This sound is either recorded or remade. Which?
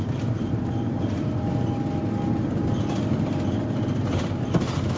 recorded